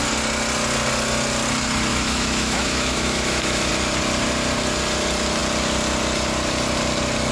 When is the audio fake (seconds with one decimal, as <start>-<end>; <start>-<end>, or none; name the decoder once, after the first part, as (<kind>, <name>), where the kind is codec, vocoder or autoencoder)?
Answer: 1.9-3.7 (autoencoder, DAC-VAE)